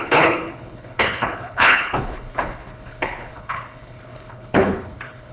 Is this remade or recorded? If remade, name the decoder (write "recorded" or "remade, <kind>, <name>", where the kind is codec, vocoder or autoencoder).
remade, codec, HILCodec